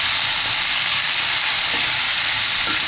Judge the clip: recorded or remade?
remade